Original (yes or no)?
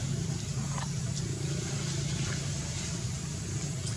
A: yes